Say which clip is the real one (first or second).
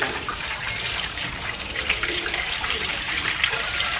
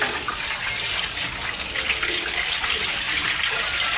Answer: second